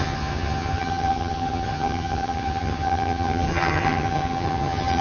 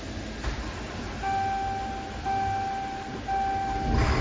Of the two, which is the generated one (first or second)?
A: first